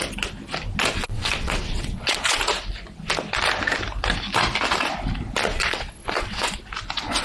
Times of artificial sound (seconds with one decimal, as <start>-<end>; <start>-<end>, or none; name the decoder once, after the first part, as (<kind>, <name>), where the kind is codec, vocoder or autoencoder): 0.9-2.4 (vocoder, WaveNeXt); 5.5-6.6